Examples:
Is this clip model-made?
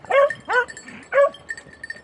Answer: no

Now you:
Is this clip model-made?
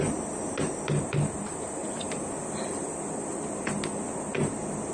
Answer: no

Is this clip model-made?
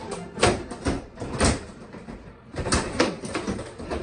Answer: yes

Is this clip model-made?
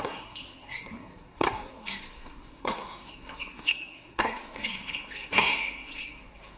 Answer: yes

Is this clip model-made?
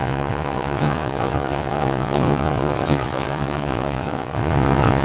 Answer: yes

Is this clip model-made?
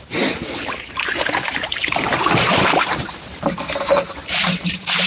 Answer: yes